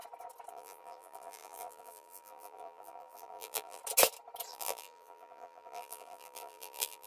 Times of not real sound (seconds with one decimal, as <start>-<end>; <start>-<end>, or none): 0.5-3.8; 4.5-7.1